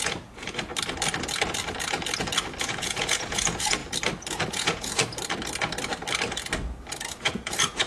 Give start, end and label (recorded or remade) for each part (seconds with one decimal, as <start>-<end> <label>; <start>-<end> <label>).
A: 0.0-0.7 remade; 0.7-2.6 recorded; 2.6-3.8 remade; 3.8-4.5 recorded; 4.5-5.0 remade; 5.0-7.1 recorded; 7.1-7.9 remade